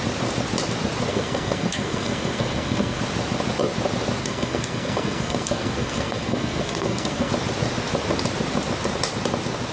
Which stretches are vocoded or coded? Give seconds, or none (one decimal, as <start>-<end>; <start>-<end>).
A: 1.1-3.0; 4.2-7.3